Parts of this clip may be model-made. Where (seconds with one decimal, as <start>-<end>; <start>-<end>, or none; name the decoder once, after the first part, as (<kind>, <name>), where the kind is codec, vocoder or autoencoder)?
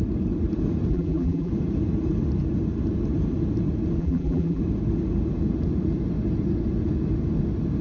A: 0.9-1.5 (vocoder, BigVGAN v2); 4.0-4.6